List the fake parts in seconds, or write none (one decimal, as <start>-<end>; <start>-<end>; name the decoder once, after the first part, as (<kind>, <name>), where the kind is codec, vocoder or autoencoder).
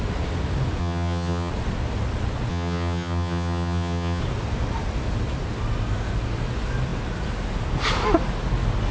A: 0.8-1.5 (vocoder, HiFi-GAN); 2.5-4.2